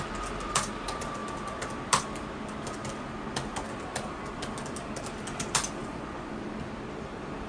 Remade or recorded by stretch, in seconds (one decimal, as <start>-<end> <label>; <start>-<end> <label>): 0.0-5.8 recorded; 5.8-6.3 remade; 6.3-7.5 recorded